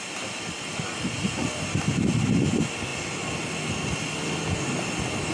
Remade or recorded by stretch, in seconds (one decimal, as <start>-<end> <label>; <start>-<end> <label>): 0.0-5.3 recorded

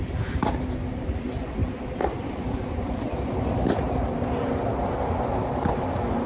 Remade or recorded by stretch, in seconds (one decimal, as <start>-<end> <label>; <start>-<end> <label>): 0.0-6.3 recorded

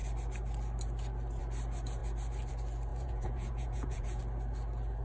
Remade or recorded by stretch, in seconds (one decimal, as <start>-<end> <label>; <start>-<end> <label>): 0.0-2.9 recorded; 2.9-4.2 remade; 4.2-5.0 recorded

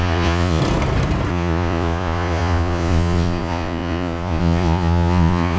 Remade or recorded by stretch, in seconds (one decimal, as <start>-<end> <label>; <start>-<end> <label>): 0.0-0.6 remade; 0.6-1.3 recorded; 1.3-5.6 remade

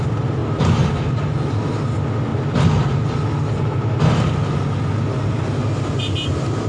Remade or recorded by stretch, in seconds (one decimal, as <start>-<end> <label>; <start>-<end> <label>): 0.0-6.7 recorded

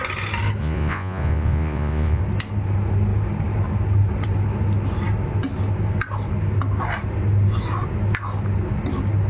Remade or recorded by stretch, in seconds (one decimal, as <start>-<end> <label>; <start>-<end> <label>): 0.0-0.6 recorded; 0.6-2.2 remade; 2.2-9.3 recorded

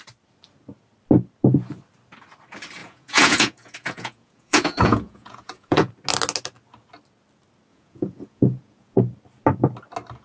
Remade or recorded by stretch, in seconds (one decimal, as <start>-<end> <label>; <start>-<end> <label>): 0.0-2.8 recorded; 2.8-5.9 remade; 5.9-7.7 recorded; 7.7-9.0 remade; 9.0-10.2 recorded